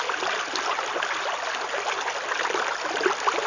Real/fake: real